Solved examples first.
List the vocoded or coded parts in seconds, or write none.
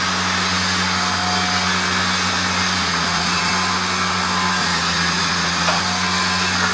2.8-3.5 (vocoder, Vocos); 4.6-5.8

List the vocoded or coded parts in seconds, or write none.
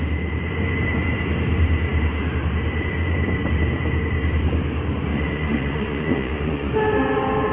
5.1-6.7 (vocoder, Vocos)